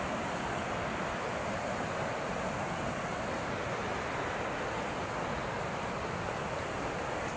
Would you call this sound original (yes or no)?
yes